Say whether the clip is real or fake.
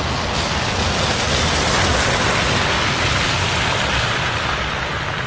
real